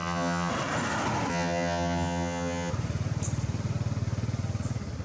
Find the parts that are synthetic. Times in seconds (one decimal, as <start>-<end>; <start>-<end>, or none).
0.0-0.5; 1.3-2.7